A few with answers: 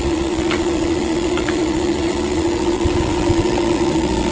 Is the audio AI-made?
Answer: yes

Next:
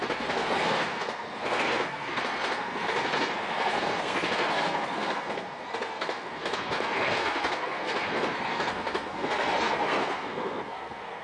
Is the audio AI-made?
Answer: yes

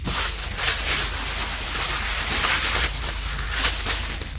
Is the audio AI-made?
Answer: no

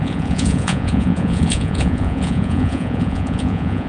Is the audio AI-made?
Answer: yes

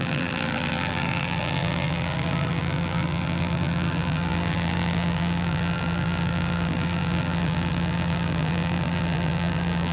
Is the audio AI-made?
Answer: yes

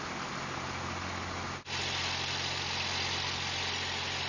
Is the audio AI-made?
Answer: no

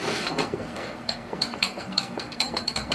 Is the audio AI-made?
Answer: yes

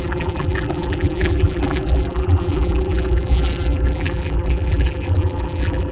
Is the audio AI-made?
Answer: yes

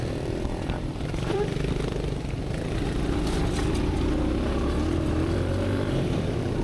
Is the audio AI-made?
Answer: yes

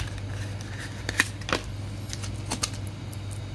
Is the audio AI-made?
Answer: no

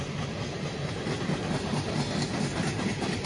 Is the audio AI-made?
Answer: no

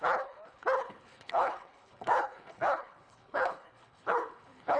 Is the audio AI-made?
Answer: yes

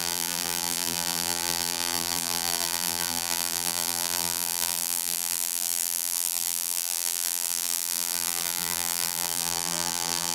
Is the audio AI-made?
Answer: yes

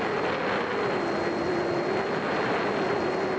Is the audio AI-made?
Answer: no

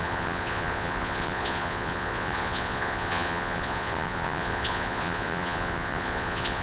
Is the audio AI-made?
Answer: yes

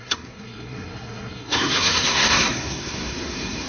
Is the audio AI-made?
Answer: yes